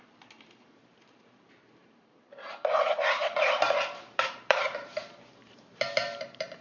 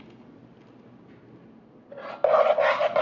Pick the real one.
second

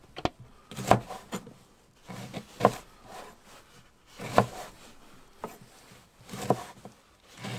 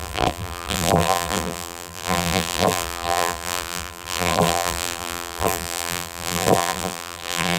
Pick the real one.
first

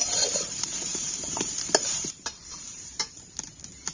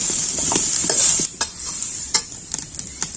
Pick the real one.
second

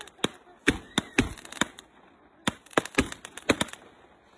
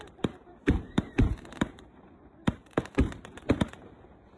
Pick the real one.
first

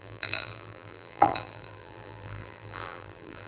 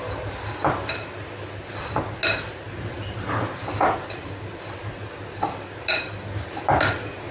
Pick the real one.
second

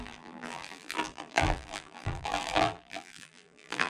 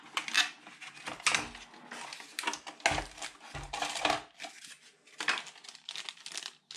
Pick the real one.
second